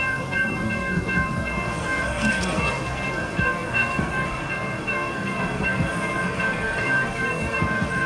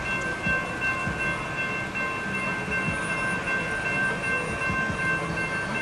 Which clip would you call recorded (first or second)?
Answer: second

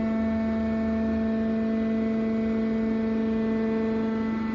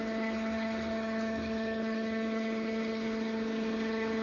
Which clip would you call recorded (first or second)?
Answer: first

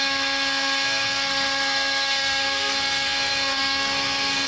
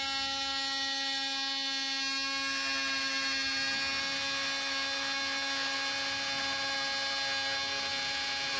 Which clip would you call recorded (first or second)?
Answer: second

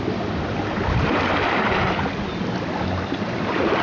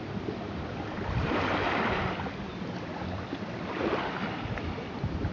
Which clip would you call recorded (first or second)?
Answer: first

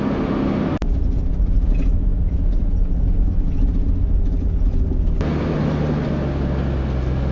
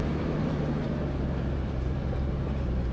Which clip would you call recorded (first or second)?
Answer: first